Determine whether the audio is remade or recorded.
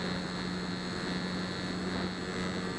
recorded